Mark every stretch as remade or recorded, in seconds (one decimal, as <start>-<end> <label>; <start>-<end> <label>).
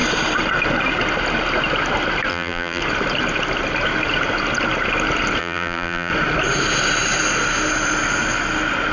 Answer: 0.0-2.3 recorded; 2.3-2.8 remade; 2.8-5.4 recorded; 5.4-6.1 remade; 6.1-8.9 recorded